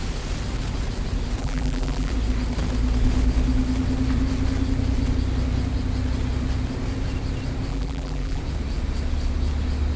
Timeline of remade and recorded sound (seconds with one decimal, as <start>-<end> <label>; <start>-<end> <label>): 0.0-1.4 recorded; 1.4-2.1 remade; 2.1-7.7 recorded; 7.7-8.4 remade; 8.4-10.0 recorded